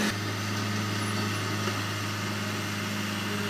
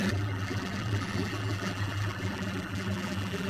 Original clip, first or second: first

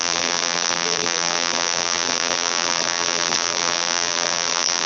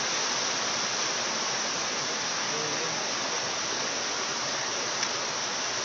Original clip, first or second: second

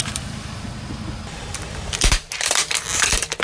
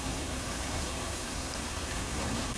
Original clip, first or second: first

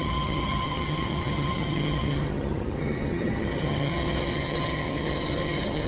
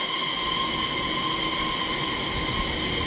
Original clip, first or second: second